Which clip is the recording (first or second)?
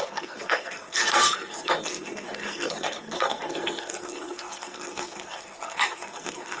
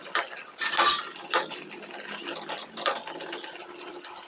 second